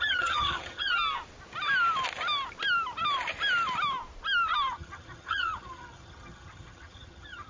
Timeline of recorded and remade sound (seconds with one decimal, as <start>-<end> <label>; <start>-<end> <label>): 0.0-0.9 remade; 0.9-4.7 recorded; 4.7-7.5 remade